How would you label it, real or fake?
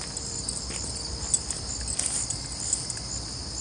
real